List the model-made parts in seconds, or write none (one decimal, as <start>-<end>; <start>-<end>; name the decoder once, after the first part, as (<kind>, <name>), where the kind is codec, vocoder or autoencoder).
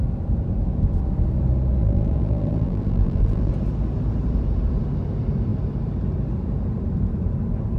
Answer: 1.8-3.5 (vocoder, BigVGAN v2)